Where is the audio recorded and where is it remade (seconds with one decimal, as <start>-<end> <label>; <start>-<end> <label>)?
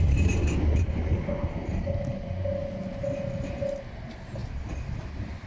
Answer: 0.0-5.5 recorded